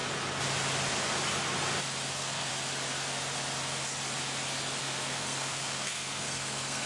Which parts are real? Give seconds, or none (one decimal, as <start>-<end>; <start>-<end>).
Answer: 0.0-2.1; 2.5-4.8